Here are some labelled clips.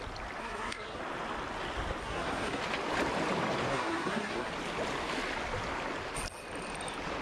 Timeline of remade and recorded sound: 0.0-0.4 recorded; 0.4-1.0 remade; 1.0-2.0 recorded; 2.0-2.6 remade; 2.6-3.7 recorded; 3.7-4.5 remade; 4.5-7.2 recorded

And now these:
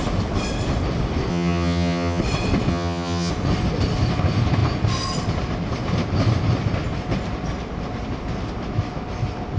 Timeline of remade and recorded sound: 0.0-1.3 recorded; 1.3-2.2 remade; 2.2-2.7 recorded; 2.7-3.3 remade; 3.3-9.6 recorded